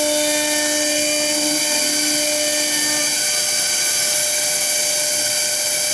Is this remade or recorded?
recorded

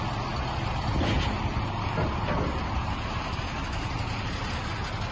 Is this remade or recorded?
recorded